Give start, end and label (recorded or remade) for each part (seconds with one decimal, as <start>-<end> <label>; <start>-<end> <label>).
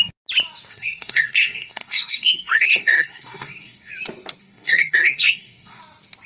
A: 0.0-0.7 recorded; 0.7-3.9 remade; 3.9-4.4 recorded; 4.4-5.8 remade; 5.8-6.3 recorded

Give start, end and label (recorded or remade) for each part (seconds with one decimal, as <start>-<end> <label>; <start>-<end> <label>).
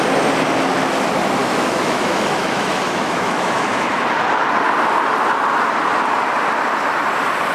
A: 0.0-1.4 recorded; 1.4-4.0 remade; 4.0-7.5 recorded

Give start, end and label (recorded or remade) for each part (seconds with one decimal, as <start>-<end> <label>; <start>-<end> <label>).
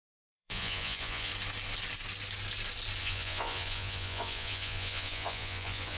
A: 0.0-1.3 remade; 1.3-3.0 recorded; 3.0-6.0 remade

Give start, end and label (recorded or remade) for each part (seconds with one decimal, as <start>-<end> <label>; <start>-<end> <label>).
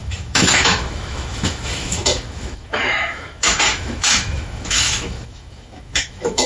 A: 0.0-6.5 remade